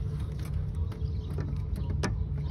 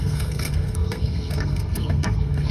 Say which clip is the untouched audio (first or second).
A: first